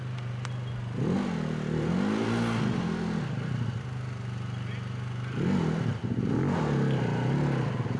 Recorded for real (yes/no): yes